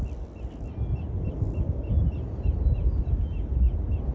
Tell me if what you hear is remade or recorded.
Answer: recorded